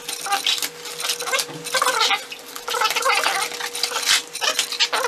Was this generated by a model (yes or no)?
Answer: no